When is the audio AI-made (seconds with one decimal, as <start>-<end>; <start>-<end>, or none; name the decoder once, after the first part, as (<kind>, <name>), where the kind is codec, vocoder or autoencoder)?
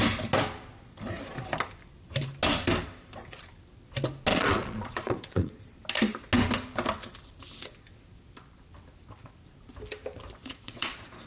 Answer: 4.3-5.6 (vocoder, Vocos); 10.4-10.9